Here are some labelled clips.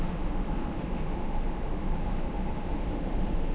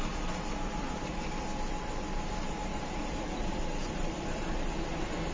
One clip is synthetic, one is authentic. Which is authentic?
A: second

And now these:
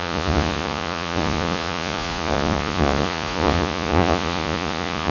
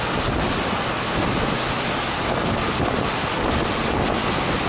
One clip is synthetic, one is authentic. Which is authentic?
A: second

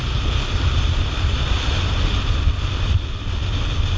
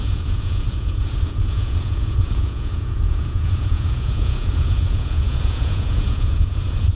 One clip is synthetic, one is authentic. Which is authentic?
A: first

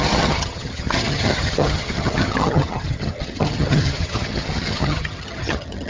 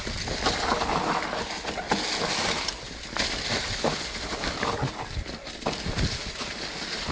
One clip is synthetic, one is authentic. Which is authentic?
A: second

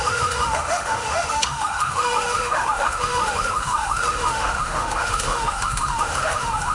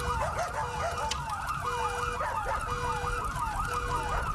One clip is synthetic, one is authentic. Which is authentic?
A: second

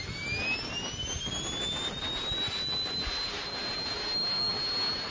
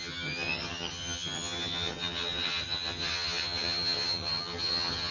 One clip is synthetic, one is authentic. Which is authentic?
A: first